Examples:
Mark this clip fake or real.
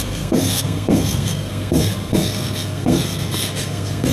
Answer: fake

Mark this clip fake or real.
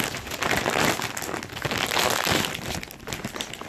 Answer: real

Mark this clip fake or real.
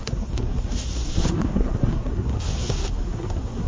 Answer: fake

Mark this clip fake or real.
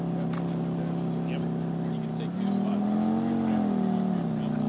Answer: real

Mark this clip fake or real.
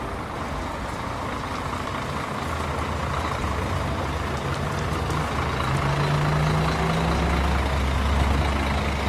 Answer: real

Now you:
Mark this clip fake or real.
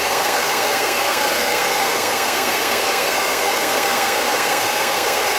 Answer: fake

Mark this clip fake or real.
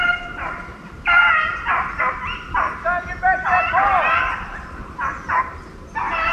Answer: real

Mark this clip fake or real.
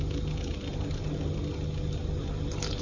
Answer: real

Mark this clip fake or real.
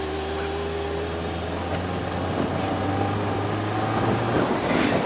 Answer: real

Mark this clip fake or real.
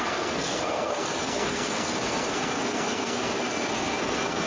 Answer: fake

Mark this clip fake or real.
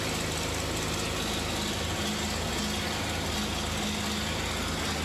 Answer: real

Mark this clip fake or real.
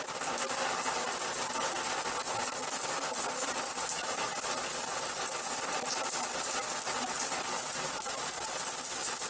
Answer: real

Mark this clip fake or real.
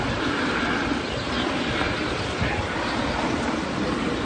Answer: real